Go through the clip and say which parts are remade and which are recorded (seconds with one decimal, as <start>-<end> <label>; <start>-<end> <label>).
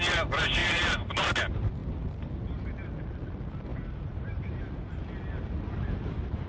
0.0-0.6 recorded; 0.6-1.4 remade; 1.4-3.7 recorded; 3.7-4.6 remade; 4.6-6.5 recorded